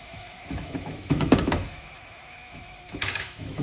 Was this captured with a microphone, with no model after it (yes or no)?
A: no